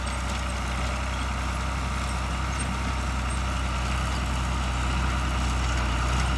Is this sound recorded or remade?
recorded